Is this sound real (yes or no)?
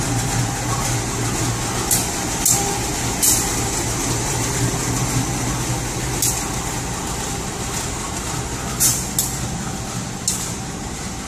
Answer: yes